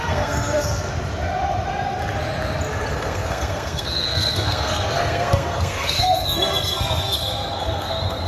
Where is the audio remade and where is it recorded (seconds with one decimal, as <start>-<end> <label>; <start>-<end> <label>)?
0.0-0.9 remade; 0.9-2.9 recorded; 2.9-8.3 remade